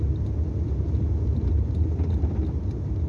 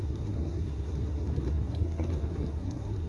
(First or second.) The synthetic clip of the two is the second